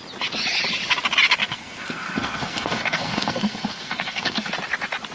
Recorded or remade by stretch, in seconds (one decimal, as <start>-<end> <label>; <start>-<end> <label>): 0.0-1.4 recorded; 1.4-4.5 remade; 4.5-5.1 recorded

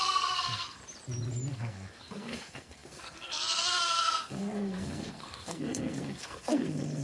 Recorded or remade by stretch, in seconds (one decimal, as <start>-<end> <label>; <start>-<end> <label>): 0.0-0.8 remade; 0.8-1.5 recorded; 1.5-7.0 remade

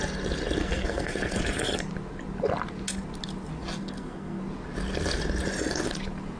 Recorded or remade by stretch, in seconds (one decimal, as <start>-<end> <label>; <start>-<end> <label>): 0.0-0.6 recorded; 0.6-1.4 remade; 1.4-3.8 recorded; 3.8-4.4 remade; 4.4-6.4 recorded

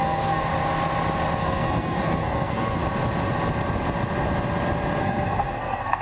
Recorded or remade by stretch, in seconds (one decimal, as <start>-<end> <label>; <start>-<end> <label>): 0.0-0.5 remade; 0.5-1.4 recorded; 1.4-2.8 remade; 2.8-5.0 recorded; 5.0-6.0 remade

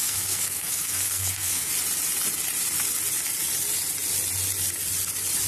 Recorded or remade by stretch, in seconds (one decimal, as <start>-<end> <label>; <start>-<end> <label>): 0.0-1.7 remade; 1.7-5.5 recorded

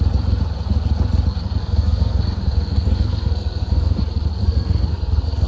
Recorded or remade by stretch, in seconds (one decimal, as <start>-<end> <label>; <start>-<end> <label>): 0.0-1.6 recorded; 1.6-4.0 remade; 4.0-4.4 recorded; 4.4-5.5 remade

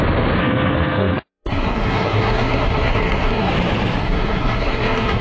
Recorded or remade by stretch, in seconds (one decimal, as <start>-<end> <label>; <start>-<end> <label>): 0.0-0.4 recorded; 0.4-3.5 remade; 3.5-4.0 recorded; 4.0-5.2 remade

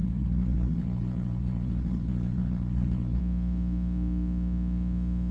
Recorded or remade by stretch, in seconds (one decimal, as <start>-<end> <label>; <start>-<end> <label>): 0.0-3.2 remade; 3.2-5.3 recorded